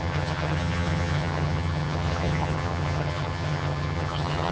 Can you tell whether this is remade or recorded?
remade